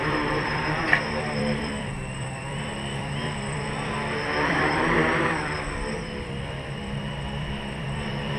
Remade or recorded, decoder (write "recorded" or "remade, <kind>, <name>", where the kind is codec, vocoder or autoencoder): remade, vocoder, BigVGAN v2